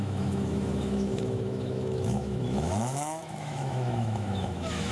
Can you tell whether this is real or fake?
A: fake